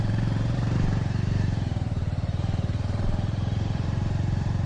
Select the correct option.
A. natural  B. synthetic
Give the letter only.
B